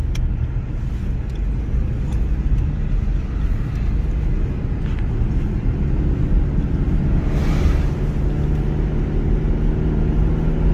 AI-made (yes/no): no